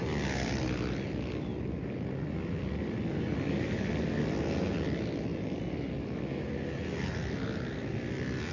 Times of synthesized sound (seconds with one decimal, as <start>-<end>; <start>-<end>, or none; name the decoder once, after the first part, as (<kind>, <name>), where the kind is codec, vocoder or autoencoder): none